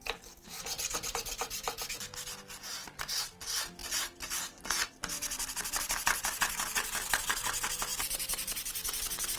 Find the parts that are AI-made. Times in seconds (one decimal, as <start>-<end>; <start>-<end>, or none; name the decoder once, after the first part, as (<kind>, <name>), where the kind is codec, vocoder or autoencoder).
none